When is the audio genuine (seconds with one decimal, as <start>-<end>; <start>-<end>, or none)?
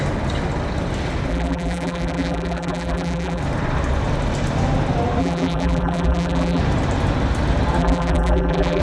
0.0-1.3; 3.4-5.2; 6.6-7.8